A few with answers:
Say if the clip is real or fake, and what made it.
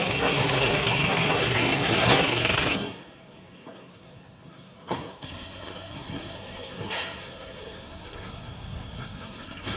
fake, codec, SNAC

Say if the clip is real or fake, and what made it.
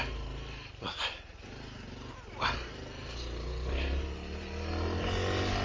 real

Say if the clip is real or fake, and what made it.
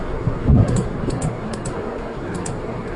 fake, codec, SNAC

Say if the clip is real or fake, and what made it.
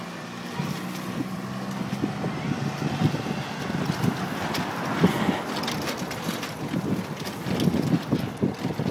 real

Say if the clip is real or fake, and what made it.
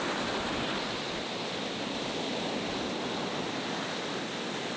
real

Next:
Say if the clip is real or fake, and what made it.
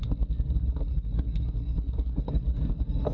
real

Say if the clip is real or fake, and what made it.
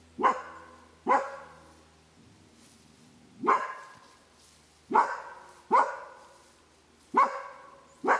real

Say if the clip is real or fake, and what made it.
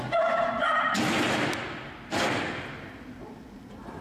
real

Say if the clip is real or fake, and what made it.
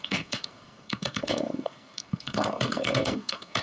fake, codec, SNAC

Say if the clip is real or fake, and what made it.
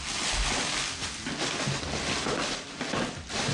real